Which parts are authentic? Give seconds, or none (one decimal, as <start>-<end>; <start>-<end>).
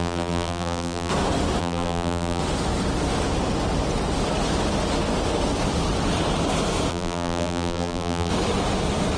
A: 1.1-1.6; 2.4-6.9; 8.3-9.2